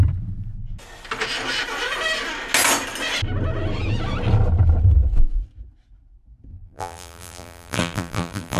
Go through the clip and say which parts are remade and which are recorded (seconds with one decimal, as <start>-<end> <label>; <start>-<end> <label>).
0.0-6.5 recorded; 6.5-8.6 remade